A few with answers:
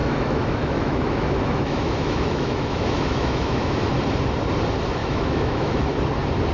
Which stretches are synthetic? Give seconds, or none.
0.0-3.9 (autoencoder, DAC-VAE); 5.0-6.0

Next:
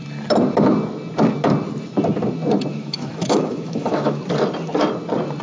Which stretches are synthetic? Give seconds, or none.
2.7-4.2 (autoencoder, DAC-VAE)

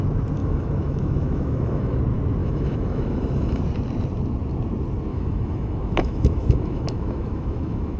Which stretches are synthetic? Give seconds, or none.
0.4-2.0 (autoencoder, DAC-VAE); 2.4-3.6; 5.1-8.0

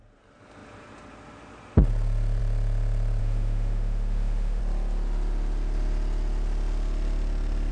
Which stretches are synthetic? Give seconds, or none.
3.2-4.6 (autoencoder, DAC-VAE)

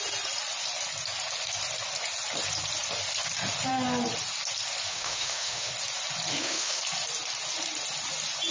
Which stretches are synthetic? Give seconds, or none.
4.9-5.7 (autoencoder, DAC-VAE); 6.3-6.8

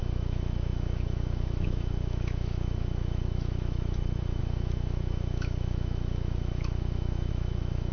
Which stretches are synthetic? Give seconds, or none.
0.0-7.9 (autoencoder, DAC-VAE)

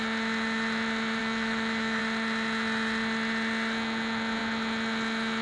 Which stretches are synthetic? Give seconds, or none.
1.2-2.0 (autoencoder, DAC-VAE)

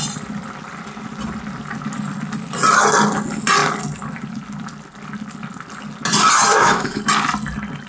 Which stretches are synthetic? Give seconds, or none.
6.5-7.0 (autoencoder, DAC-VAE)